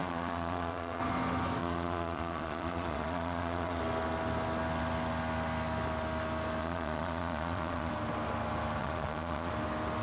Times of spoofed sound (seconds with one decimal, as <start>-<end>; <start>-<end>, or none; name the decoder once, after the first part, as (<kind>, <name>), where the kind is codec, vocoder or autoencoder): 0.0-1.0 (vocoder, Vocos); 1.6-3.8; 6.6-7.9; 8.8-9.5